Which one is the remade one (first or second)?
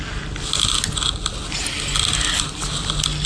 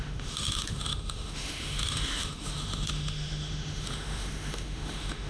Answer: second